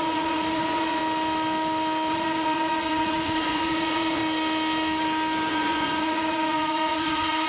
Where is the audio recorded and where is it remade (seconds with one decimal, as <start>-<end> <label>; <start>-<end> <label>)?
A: 0.0-1.0 remade; 1.0-2.1 recorded; 2.1-4.2 remade; 4.2-5.5 recorded; 5.5-7.5 remade